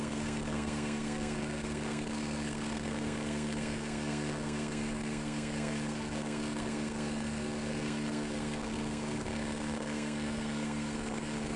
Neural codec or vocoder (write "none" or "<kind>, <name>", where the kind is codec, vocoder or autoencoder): codec, SNAC